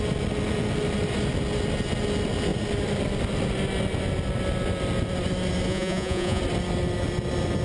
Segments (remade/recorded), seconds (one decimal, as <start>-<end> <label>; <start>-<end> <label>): 0.0-5.7 recorded; 5.7-6.4 remade; 6.4-7.6 recorded

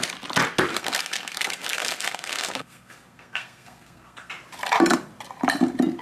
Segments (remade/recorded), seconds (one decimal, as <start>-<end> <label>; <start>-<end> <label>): 0.0-0.7 recorded; 0.7-4.3 remade; 4.3-6.0 recorded

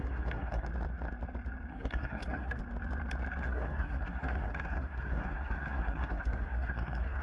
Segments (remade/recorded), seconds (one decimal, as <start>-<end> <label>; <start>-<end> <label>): 0.0-0.7 remade; 0.7-1.7 recorded; 1.7-2.6 remade; 2.6-3.4 recorded; 3.4-7.2 remade